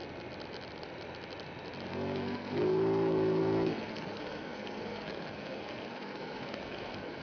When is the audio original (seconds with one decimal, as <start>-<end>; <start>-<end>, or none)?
0.0-1.9